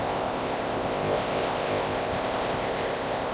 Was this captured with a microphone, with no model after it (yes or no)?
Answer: no